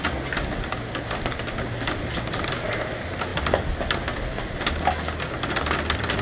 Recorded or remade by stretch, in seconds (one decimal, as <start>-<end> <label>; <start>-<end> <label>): 0.0-6.2 recorded